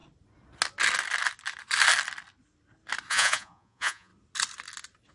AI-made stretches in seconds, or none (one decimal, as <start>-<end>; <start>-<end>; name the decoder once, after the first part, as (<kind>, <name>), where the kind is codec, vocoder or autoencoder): 3.1-4.1 (vocoder, Vocos)